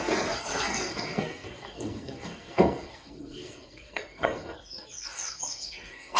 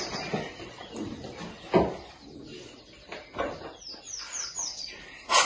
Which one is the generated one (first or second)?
first